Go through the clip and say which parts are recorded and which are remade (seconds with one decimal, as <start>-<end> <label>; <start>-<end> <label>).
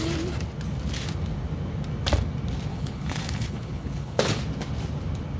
0.0-2.7 recorded; 2.7-4.4 remade; 4.4-5.4 recorded